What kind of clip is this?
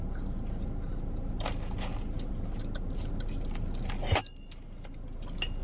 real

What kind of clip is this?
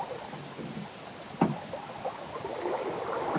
real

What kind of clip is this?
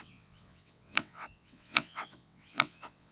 fake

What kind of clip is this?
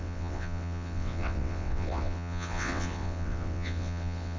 fake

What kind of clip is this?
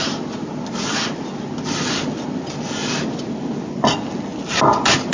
real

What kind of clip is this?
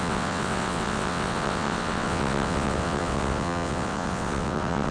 fake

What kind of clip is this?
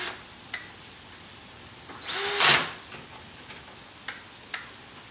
real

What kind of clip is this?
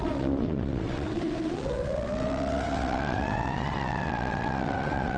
fake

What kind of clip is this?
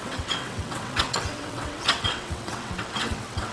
fake